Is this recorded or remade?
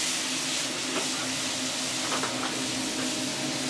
recorded